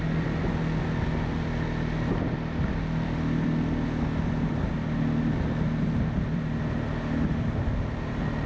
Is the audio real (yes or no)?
yes